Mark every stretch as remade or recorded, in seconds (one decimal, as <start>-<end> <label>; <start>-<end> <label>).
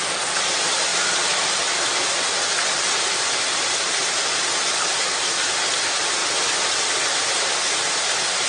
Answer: 0.0-0.9 recorded; 0.9-5.0 remade; 5.0-6.2 recorded; 6.2-7.5 remade; 7.5-8.5 recorded